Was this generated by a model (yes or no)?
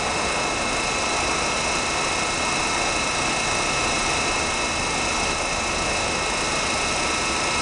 no